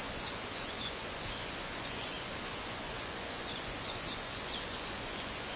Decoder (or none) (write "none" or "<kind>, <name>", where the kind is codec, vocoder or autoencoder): vocoder, Vocos